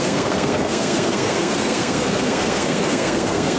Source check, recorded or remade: remade